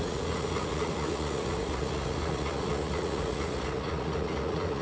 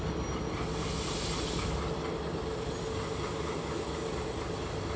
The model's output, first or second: first